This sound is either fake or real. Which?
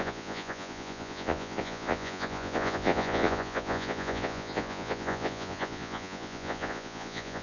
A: fake